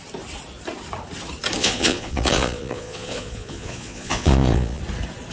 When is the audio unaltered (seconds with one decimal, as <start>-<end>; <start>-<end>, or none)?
0.0-1.6; 4.8-5.3